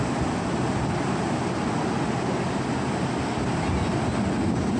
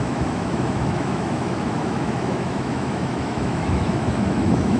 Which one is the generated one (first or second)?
second